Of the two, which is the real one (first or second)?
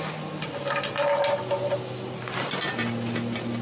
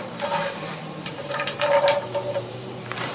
first